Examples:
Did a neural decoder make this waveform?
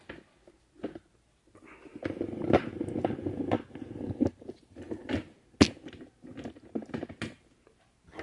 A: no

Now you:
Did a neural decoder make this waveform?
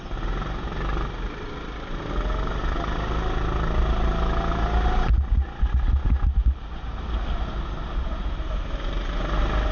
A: no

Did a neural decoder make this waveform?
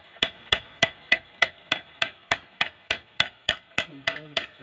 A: yes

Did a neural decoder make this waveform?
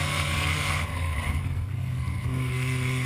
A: yes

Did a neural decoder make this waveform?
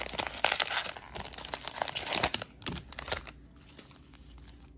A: no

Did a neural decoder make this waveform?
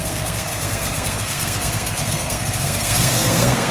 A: yes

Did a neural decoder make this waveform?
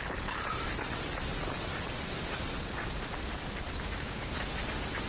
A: no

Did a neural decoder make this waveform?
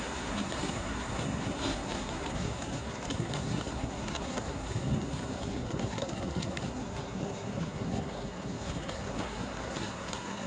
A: yes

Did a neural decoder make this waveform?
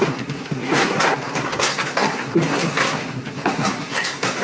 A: yes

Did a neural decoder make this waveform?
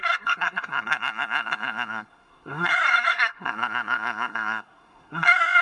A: yes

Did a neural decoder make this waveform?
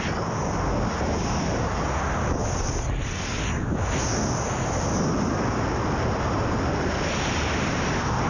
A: no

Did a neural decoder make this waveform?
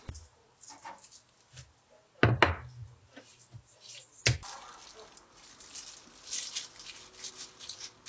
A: no